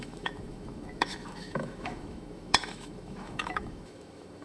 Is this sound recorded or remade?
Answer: remade